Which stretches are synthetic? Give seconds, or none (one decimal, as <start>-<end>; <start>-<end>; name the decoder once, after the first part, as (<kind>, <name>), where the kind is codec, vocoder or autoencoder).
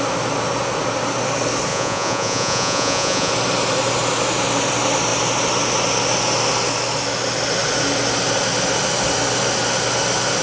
1.7-3.3 (vocoder, Vocos)